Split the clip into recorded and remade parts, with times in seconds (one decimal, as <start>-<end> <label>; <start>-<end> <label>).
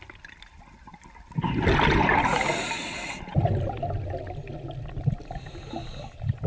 0.0-6.5 recorded